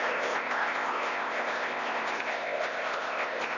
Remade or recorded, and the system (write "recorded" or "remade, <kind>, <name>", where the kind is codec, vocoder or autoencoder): remade, codec, ZipCodec